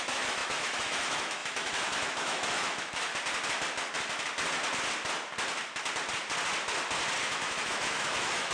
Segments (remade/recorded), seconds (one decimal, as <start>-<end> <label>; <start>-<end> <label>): 0.0-3.1 remade; 3.1-7.2 recorded; 7.2-8.5 remade